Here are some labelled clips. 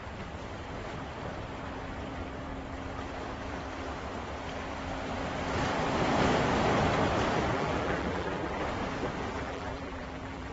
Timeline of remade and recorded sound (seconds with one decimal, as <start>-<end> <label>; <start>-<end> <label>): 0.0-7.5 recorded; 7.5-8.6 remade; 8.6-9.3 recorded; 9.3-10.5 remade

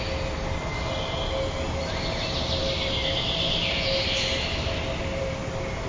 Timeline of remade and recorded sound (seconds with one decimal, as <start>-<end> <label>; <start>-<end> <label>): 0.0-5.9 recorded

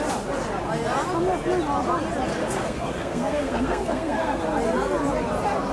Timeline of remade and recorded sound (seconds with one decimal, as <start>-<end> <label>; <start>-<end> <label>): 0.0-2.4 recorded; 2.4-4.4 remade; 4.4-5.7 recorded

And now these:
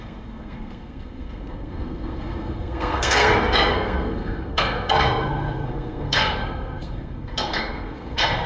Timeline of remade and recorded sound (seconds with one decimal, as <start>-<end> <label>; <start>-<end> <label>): 0.0-8.5 remade